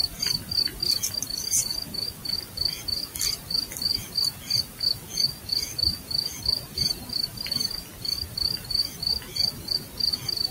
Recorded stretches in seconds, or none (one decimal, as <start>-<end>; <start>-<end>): 0.0-10.5